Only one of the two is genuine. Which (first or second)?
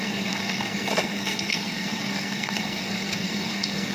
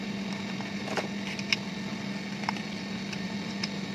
second